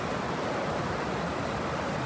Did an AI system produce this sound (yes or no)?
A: no